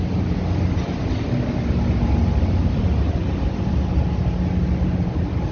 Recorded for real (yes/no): yes